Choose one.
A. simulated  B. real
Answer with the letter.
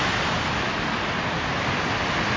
B